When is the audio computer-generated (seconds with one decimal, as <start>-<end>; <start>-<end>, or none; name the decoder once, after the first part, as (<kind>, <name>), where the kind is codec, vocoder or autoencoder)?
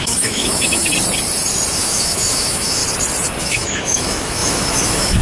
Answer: 0.0-0.8 (autoencoder, DAC-VAE); 1.7-2.8; 3.4-5.2